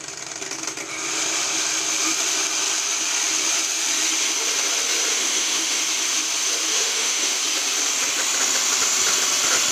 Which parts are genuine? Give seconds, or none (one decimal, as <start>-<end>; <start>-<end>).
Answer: 0.0-5.1; 5.8-6.7; 7.4-9.7